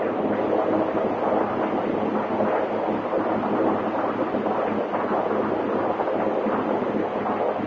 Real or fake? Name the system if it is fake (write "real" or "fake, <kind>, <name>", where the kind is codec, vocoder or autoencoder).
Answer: real